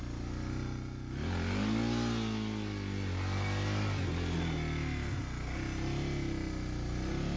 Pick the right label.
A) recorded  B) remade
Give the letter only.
A